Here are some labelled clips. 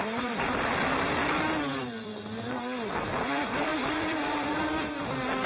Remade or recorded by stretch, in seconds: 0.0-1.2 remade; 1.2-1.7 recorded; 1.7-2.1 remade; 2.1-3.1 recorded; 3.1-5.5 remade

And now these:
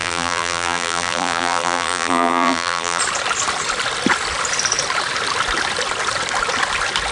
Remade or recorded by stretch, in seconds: 0.0-3.0 remade; 3.0-7.1 recorded